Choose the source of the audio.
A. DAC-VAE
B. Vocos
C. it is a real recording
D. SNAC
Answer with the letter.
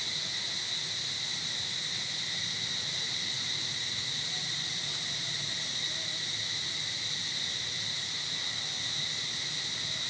C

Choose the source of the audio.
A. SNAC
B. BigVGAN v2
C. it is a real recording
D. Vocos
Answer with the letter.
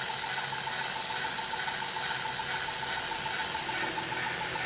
C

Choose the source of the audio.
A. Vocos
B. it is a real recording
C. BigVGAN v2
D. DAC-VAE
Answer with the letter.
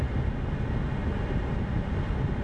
B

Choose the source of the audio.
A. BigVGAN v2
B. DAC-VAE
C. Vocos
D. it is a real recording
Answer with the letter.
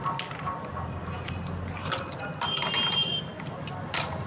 D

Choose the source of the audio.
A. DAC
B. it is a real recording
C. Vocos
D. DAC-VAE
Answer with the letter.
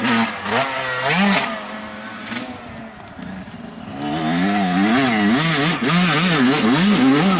B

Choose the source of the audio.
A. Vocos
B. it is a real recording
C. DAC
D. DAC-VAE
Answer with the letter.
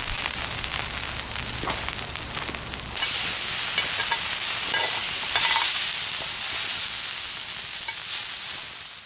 B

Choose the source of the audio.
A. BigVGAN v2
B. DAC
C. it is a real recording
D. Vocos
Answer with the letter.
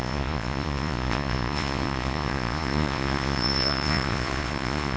D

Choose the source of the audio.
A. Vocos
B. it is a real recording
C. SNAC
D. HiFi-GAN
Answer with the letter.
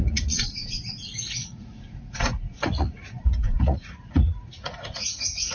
A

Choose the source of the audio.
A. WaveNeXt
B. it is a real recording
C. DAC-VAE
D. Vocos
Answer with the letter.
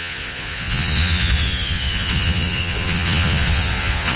D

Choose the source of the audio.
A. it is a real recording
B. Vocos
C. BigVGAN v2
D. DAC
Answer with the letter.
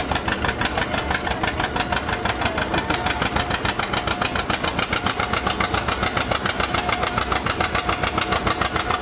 A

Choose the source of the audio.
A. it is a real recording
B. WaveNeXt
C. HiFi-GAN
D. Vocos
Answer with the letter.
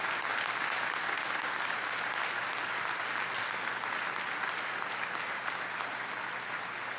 A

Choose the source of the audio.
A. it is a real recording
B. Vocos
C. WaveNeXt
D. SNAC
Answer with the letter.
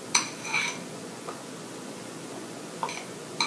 B